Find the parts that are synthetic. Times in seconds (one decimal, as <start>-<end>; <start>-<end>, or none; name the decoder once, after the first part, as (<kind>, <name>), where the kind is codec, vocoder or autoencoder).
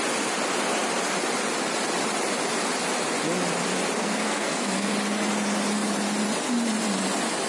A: 4.0-4.9 (codec, SNAC)